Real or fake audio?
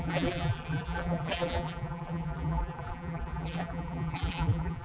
fake